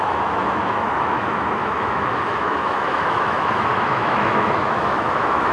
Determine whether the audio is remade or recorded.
remade